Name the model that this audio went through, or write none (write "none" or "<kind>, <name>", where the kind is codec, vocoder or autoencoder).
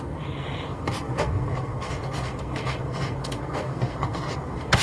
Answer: codec, SNAC